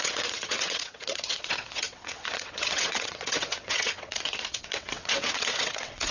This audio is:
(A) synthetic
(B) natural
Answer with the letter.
A